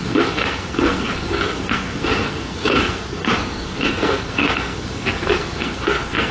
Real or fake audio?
fake